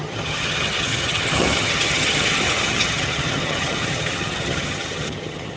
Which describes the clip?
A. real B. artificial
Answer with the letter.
B